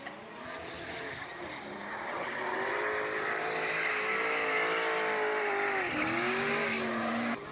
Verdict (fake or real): real